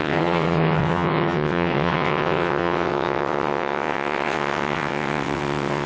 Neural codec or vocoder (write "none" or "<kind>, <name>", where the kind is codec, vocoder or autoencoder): vocoder, WaveNeXt